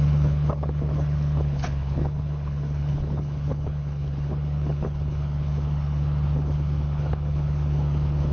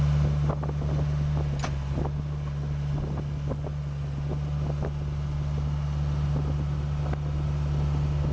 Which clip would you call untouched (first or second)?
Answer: second